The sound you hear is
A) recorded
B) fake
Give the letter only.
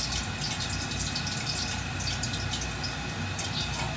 A